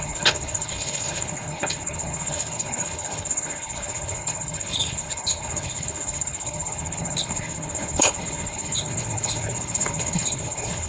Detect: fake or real fake